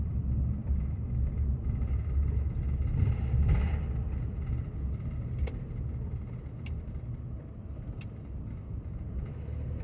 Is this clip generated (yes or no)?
no